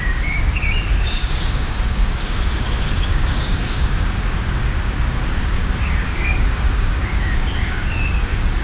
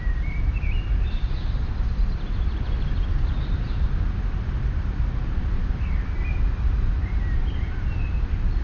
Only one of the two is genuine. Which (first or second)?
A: second